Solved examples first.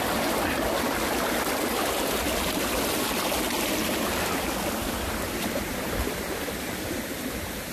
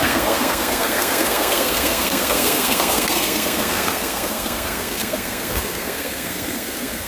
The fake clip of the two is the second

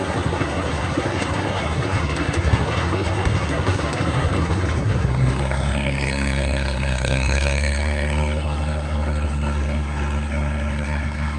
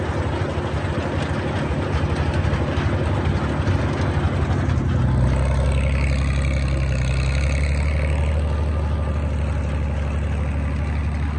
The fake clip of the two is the first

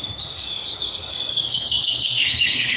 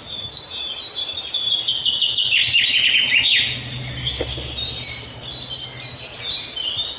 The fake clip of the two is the first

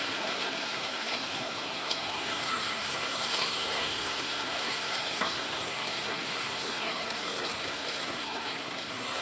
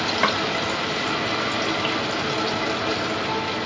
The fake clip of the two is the first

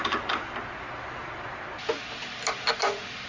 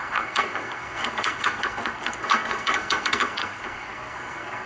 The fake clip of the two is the second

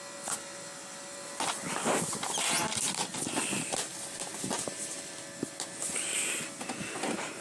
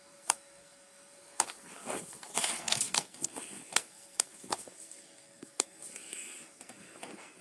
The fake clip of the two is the second